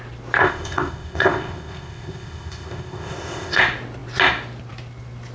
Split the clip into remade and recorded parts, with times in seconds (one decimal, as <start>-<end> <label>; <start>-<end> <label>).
0.0-0.4 recorded; 0.4-3.6 remade; 3.6-5.3 recorded